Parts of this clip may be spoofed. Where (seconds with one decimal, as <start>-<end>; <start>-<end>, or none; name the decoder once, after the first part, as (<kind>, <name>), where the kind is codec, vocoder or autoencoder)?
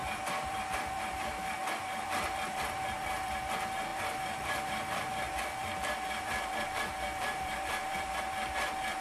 0.0-3.4 (vocoder, BigVGAN v2); 3.9-8.2